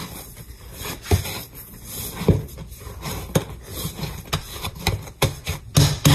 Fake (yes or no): no